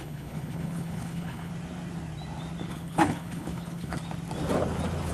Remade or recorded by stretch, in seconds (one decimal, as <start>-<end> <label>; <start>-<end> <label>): 0.0-1.5 remade; 1.5-2.7 recorded; 2.7-4.0 remade; 4.0-5.1 recorded